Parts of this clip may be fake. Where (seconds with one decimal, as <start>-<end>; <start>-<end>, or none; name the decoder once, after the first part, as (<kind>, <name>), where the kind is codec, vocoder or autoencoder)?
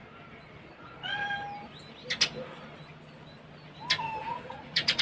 0.6-1.2 (vocoder, Vocos); 4.2-5.0